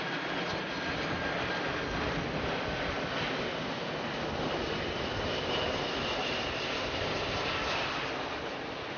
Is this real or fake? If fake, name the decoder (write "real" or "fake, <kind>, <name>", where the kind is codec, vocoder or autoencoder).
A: real